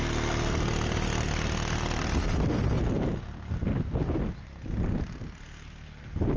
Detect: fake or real real